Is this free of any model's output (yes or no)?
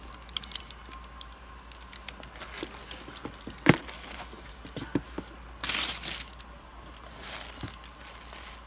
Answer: yes